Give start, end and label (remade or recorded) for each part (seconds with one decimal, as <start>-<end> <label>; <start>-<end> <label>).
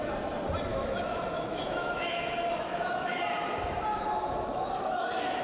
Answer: 0.0-0.7 recorded; 0.7-3.2 remade; 3.2-3.9 recorded; 3.9-5.4 remade